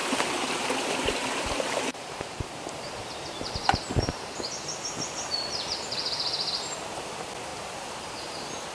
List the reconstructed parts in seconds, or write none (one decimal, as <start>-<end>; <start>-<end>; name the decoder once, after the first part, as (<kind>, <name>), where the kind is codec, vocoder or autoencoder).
0.0-4.5 (vocoder, BigVGAN v2); 7.5-8.0